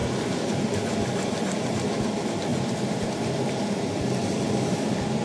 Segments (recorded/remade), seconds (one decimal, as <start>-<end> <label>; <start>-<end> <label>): 0.0-0.6 remade; 0.6-2.5 recorded; 2.5-3.1 remade; 3.1-5.2 recorded